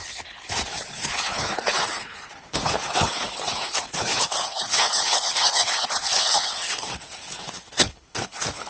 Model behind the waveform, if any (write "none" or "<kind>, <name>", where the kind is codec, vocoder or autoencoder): codec, HILCodec